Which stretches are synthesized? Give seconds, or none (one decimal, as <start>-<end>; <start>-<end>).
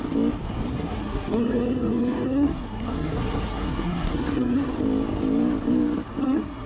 0.7-4.7; 6.2-6.7